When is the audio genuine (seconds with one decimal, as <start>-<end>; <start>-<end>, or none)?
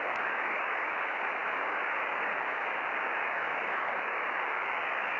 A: none